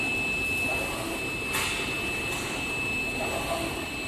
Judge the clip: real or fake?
real